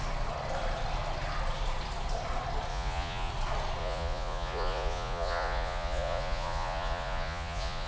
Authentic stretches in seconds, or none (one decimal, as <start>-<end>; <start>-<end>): 0.0-2.7; 3.3-3.8